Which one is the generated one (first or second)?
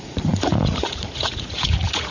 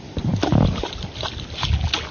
first